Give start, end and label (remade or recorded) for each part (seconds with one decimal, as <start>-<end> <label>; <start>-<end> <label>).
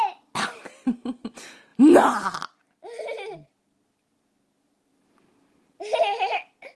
0.0-6.7 recorded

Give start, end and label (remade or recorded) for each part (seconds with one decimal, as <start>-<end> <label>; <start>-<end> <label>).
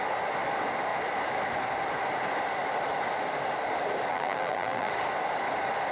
0.0-4.1 recorded; 4.1-4.9 remade; 4.9-5.9 recorded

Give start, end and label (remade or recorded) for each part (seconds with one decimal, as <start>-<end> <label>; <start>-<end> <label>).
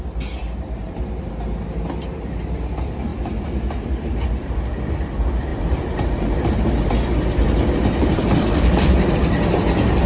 0.0-0.4 recorded; 0.4-1.3 remade; 1.3-3.1 recorded; 3.1-4.6 remade; 4.6-5.5 recorded; 5.5-9.1 remade; 9.1-10.1 recorded